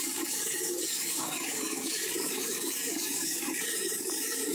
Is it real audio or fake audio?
fake